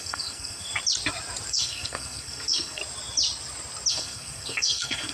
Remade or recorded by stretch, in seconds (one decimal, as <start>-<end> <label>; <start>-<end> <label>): 0.0-0.7 remade; 0.7-1.5 recorded; 1.5-2.8 remade; 2.8-3.9 recorded; 3.9-5.1 remade